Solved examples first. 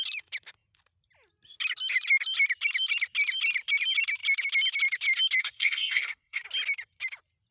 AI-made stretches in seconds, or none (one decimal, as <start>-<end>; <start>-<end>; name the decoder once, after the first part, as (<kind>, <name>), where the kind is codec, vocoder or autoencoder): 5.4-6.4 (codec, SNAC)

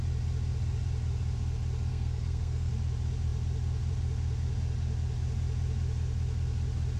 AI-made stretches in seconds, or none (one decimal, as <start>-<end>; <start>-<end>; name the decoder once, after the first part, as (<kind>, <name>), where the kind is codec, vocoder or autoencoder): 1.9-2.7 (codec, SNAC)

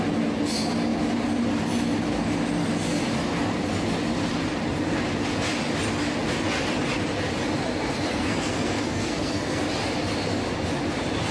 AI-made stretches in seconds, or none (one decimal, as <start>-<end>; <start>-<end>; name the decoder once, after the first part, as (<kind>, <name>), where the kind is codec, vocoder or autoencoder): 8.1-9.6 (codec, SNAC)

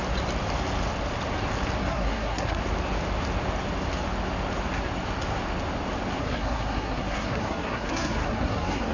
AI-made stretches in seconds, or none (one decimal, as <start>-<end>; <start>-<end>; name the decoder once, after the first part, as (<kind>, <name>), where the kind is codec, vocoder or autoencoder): 1.8-2.6 (codec, SNAC); 6.2-8.9

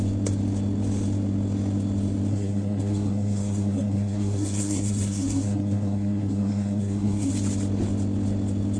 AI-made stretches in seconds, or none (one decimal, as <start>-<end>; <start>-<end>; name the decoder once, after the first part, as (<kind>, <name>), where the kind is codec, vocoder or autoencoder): 2.3-7.3 (codec, SNAC)

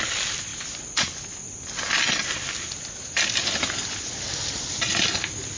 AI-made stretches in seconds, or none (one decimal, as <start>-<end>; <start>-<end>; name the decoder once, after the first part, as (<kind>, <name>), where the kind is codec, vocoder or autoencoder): none